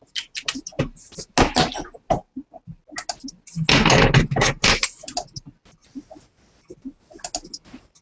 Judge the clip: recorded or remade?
recorded